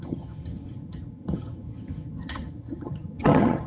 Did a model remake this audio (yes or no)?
yes